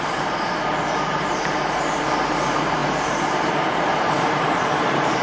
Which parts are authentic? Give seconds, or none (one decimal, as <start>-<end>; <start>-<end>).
none